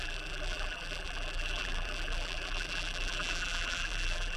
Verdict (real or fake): fake